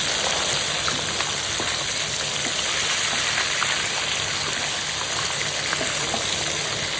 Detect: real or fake real